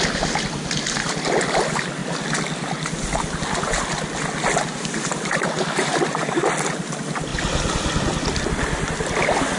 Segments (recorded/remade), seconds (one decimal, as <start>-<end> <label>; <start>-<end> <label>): 0.0-9.6 recorded